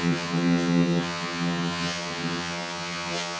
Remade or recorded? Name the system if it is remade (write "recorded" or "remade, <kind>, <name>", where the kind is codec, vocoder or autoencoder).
remade, vocoder, HiFi-GAN